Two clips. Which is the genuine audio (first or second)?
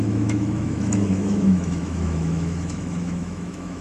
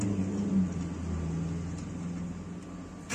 second